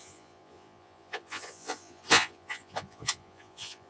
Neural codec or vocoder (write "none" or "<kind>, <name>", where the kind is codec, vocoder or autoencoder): vocoder, Vocos